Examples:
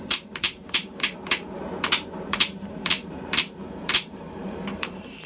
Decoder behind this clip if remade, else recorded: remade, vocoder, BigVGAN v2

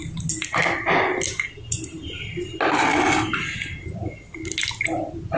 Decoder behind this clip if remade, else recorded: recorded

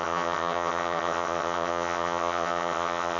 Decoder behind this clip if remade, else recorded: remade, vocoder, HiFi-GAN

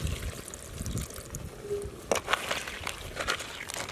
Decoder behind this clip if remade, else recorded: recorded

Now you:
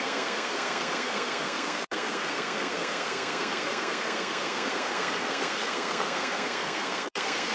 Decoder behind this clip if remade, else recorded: remade, codec, SNAC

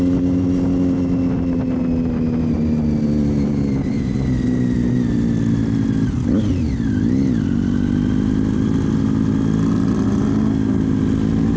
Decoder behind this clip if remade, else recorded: recorded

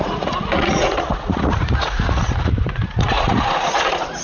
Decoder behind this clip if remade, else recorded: remade, vocoder, Vocos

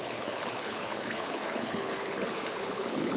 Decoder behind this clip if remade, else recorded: remade, codec, HILCodec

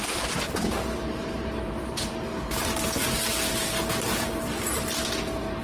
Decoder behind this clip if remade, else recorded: recorded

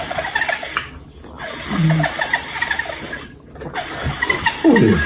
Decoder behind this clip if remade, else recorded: recorded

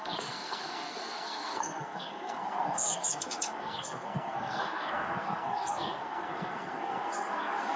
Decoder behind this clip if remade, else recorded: remade, codec, SNAC